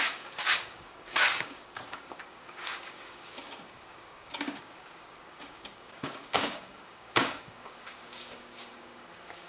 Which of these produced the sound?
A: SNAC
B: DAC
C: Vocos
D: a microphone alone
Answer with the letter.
B